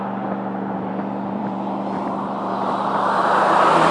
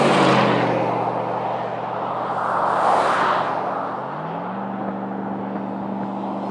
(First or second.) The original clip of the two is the second